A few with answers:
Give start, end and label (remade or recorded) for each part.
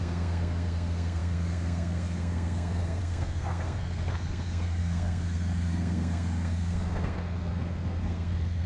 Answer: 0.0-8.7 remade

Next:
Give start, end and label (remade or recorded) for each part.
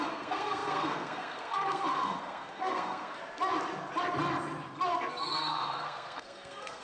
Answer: 0.0-3.2 remade; 3.2-5.1 recorded; 5.1-6.8 remade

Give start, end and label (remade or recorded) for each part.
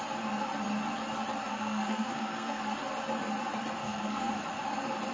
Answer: 0.0-1.5 recorded; 1.5-2.6 remade; 2.6-3.8 recorded; 3.8-4.3 remade; 4.3-5.1 recorded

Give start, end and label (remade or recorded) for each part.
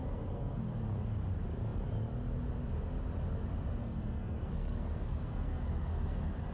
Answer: 0.0-0.6 remade; 0.6-3.8 recorded; 3.8-6.5 remade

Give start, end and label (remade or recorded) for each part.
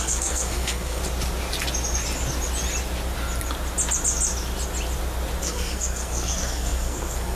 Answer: 0.0-1.0 remade; 1.0-5.4 recorded; 5.4-7.4 remade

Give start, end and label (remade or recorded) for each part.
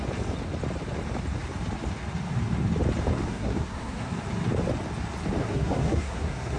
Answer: 0.0-3.3 recorded; 3.3-4.1 remade; 4.1-5.4 recorded; 5.4-6.6 remade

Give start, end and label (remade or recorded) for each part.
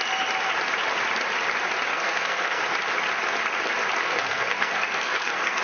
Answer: 0.0-1.9 recorded; 1.9-2.6 remade; 2.6-4.0 recorded; 4.0-5.6 remade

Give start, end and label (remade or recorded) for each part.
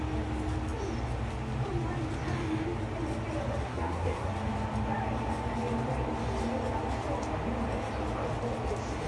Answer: 0.0-3.6 recorded; 3.6-4.3 remade; 4.3-9.1 recorded